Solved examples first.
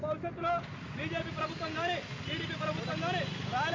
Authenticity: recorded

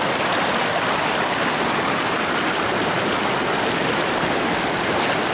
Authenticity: recorded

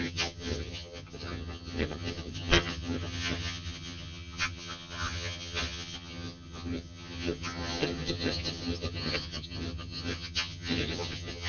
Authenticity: remade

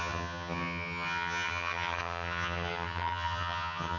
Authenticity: remade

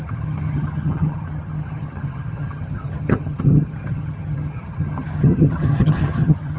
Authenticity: remade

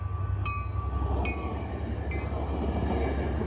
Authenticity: recorded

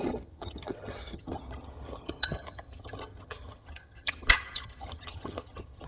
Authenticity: remade